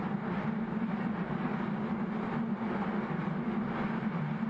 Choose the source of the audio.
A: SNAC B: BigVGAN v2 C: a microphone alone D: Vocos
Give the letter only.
C